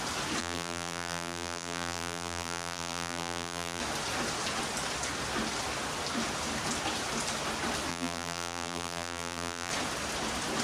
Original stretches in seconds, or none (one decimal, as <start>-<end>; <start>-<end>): 0.0-0.4; 3.8-7.9; 9.7-10.6